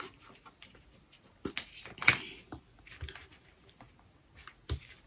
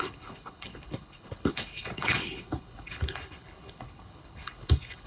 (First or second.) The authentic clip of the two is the first